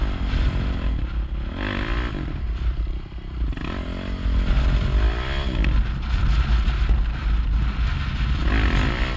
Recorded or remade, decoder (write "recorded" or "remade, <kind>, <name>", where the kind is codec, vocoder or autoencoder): recorded